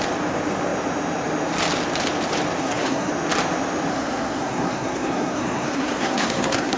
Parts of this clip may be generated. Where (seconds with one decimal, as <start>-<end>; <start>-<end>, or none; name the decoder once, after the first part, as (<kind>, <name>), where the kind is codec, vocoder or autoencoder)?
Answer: 2.6-3.1 (codec, SNAC); 3.9-6.8